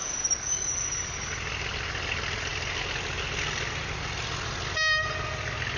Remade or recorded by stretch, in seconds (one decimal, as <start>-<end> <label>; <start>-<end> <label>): 0.0-5.8 recorded